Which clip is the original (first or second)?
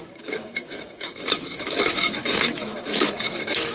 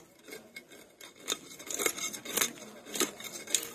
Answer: second